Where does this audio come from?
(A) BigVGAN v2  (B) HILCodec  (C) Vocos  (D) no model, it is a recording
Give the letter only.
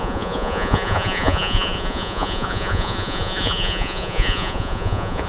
C